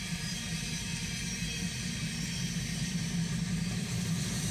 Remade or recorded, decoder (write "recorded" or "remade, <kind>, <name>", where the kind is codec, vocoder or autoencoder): recorded